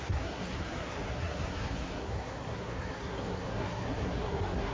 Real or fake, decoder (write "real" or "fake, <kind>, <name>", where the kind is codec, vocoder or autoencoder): fake, codec, SNAC